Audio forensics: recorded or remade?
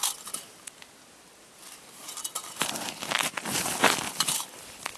remade